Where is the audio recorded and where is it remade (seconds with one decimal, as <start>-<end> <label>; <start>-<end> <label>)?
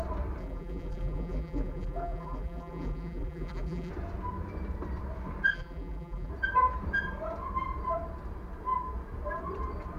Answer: 0.0-0.4 recorded; 0.4-3.9 remade; 3.9-5.5 recorded; 5.5-6.3 remade; 6.3-10.0 recorded